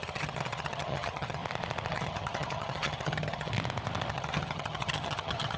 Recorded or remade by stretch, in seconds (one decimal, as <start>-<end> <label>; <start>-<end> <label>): 0.0-1.4 remade; 1.4-1.9 recorded; 1.9-3.5 remade; 3.5-4.1 recorded; 4.1-5.6 remade